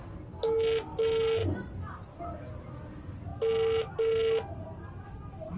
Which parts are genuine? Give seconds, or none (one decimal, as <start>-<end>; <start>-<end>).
0.0-5.6